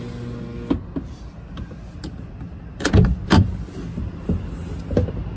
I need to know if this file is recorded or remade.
recorded